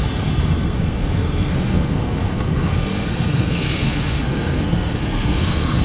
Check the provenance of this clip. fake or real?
fake